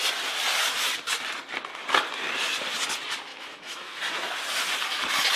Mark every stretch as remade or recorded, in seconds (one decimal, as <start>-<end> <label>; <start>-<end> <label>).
0.0-3.3 recorded; 3.3-4.0 remade; 4.0-5.4 recorded